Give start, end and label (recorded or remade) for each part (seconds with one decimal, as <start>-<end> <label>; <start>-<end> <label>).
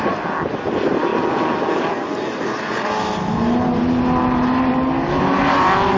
0.0-6.0 recorded